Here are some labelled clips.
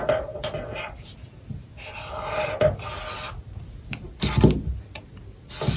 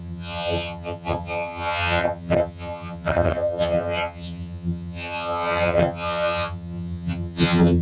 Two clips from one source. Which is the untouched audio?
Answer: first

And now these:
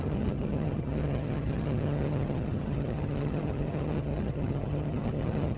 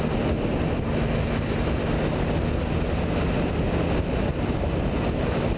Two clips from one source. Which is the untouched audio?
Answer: second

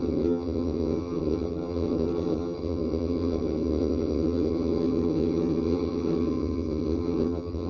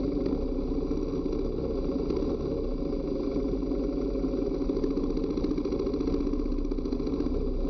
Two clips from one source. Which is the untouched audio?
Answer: second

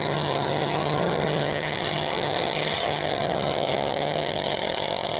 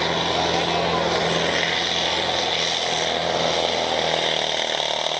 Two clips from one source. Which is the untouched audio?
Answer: second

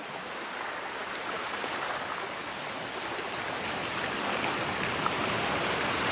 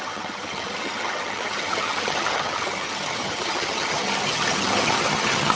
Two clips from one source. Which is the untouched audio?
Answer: first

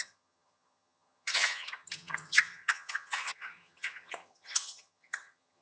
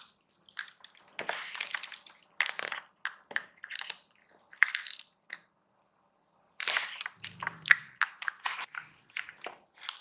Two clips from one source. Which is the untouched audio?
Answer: second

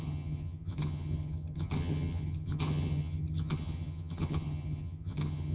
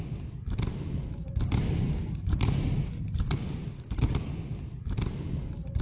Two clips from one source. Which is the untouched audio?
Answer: second